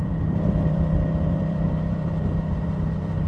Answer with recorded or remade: remade